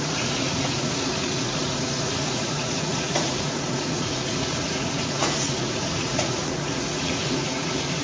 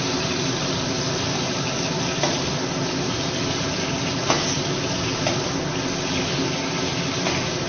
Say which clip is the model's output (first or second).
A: first